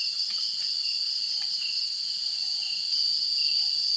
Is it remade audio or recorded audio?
recorded